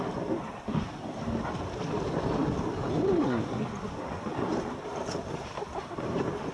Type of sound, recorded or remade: remade